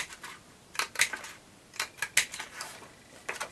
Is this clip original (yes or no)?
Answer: yes